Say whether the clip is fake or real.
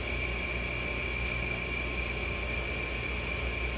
real